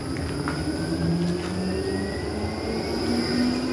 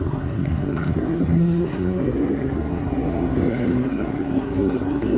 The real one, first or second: first